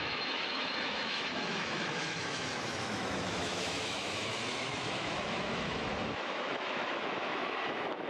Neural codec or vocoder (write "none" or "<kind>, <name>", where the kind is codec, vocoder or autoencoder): autoencoder, DAC-VAE